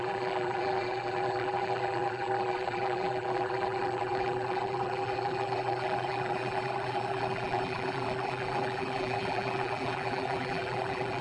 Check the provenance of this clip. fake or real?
fake